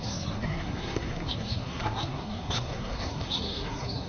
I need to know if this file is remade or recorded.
remade